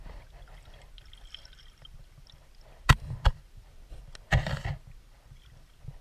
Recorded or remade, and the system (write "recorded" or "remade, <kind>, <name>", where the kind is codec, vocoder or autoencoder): recorded